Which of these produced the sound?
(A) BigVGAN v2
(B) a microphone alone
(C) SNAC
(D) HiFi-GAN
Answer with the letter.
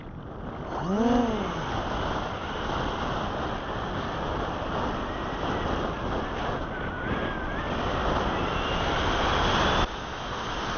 B